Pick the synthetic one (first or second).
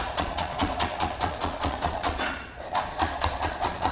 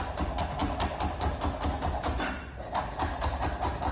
first